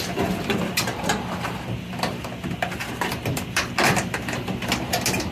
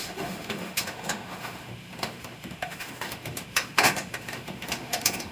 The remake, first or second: second